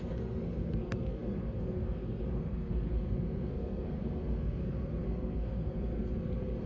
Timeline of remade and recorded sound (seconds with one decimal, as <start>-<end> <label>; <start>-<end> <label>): 0.0-6.7 remade